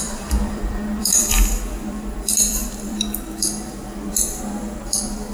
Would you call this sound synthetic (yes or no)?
yes